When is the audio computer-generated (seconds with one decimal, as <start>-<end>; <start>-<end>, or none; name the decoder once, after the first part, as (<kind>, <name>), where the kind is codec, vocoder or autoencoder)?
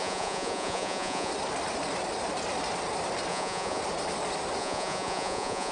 0.0-1.3 (vocoder, Vocos); 3.3-3.8; 4.6-5.7